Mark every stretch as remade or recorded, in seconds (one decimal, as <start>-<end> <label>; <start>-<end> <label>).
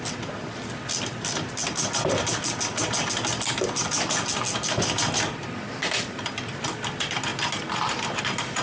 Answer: 0.0-8.6 recorded